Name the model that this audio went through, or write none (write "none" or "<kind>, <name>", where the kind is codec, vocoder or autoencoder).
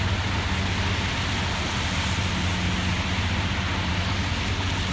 none